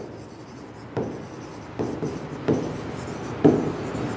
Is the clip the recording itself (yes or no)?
yes